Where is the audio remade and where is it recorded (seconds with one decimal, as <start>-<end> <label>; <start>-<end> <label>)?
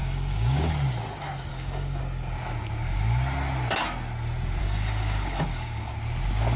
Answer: 0.0-0.7 remade; 0.7-1.5 recorded; 1.5-2.0 remade; 2.0-4.6 recorded; 4.6-5.9 remade; 5.9-6.6 recorded